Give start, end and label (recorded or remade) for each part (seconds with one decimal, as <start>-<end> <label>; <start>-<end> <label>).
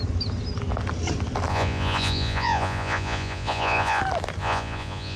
0.0-1.5 recorded; 1.5-4.0 remade; 4.0-4.4 recorded; 4.4-5.2 remade